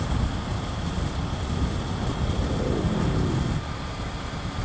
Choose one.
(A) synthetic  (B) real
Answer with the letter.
B